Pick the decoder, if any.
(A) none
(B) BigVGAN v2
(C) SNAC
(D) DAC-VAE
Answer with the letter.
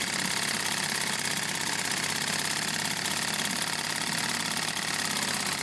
A